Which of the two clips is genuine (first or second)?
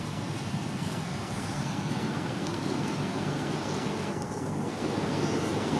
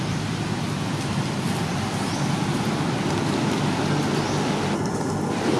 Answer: second